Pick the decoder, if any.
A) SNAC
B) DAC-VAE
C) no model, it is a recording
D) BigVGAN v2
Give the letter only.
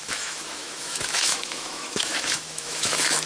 B